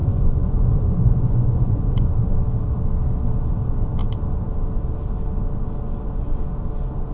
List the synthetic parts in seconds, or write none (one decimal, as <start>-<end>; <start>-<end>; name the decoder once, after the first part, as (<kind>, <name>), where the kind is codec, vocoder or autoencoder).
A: 0.0-2.1 (vocoder, Vocos)